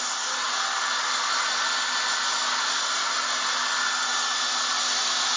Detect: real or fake real